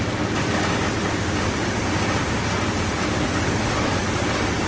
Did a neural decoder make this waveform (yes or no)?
no